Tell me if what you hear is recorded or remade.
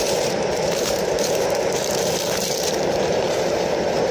remade